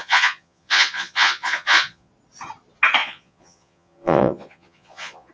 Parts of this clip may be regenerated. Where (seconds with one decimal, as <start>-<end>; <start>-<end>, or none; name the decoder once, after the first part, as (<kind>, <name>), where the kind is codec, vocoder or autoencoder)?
0.0-2.1 (vocoder, Vocos); 3.0-5.3

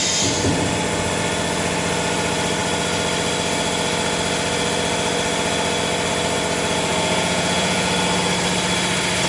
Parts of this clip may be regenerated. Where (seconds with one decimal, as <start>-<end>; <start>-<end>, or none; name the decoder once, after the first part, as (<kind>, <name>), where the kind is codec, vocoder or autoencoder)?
6.9-7.9 (vocoder, Vocos)

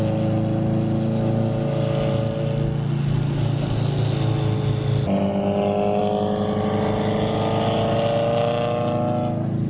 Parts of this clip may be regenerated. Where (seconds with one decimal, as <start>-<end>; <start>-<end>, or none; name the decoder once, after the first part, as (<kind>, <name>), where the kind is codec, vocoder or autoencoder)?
none

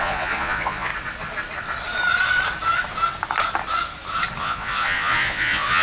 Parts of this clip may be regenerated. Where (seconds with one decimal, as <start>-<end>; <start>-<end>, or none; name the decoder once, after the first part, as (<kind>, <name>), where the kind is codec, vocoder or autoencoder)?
0.0-0.9 (vocoder, Vocos); 4.4-5.8

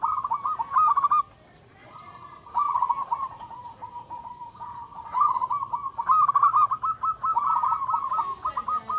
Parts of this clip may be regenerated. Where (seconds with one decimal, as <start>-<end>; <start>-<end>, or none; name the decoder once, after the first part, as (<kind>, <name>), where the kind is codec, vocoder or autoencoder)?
1.7-5.4 (vocoder, Vocos)

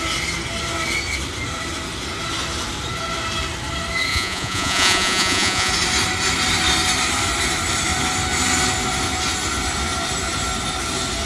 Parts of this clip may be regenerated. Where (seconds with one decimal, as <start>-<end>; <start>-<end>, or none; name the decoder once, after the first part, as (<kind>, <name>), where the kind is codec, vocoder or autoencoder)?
4.1-5.7 (vocoder, Vocos)

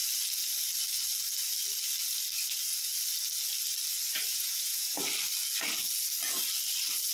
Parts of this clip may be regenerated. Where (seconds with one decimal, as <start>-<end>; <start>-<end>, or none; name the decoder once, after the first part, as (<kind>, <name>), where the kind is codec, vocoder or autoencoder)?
4.3-4.9 (vocoder, Vocos)

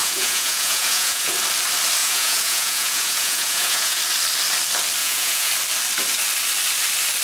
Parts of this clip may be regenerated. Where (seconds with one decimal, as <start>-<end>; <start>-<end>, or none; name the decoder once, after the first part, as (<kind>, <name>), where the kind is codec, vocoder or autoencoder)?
0.0-1.3 (vocoder, Vocos); 2.0-4.0; 5.0-5.5